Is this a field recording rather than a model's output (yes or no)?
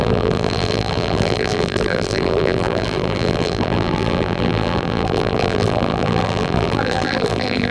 no